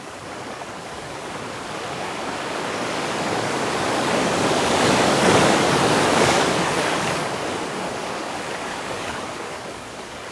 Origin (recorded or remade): remade